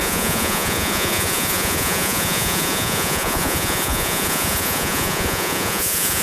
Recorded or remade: remade